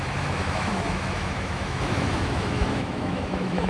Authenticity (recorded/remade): remade